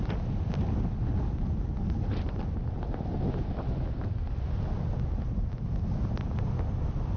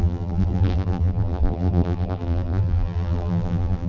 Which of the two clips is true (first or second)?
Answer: first